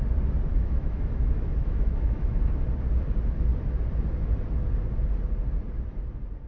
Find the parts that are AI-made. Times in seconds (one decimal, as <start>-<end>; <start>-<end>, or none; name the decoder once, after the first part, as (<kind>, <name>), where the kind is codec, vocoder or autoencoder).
0.5-2.4 (autoencoder, DAC-VAE)